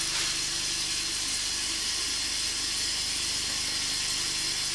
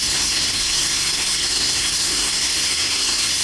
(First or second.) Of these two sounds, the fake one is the second